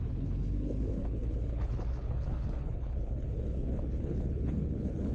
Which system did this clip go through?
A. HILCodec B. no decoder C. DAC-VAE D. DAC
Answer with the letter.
A